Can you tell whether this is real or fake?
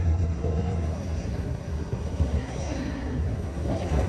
fake